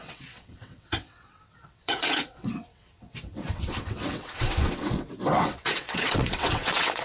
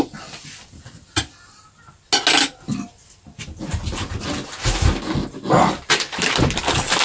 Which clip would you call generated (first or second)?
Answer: first